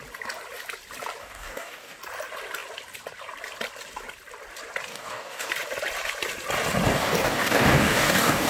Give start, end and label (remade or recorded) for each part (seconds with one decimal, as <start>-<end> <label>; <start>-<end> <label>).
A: 0.0-1.2 recorded; 1.2-2.0 remade; 2.0-4.9 recorded; 4.9-5.5 remade; 5.5-6.9 recorded; 6.9-8.5 remade